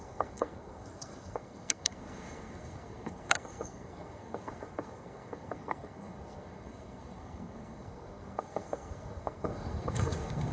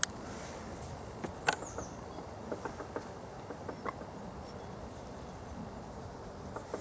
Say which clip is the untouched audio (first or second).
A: second